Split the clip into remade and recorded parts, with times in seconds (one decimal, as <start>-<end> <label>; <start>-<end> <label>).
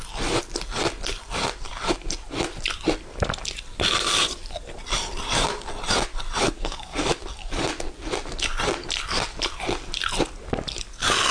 0.0-6.4 recorded; 6.4-7.2 remade; 7.2-11.3 recorded